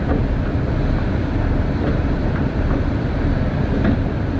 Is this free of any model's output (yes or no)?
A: no